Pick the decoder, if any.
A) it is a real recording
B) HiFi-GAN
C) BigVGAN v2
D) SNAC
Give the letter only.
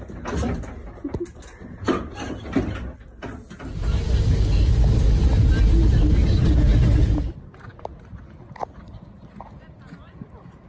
A